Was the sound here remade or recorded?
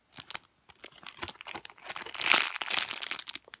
recorded